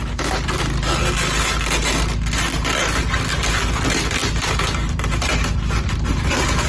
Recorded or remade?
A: recorded